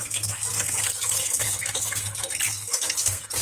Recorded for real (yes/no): no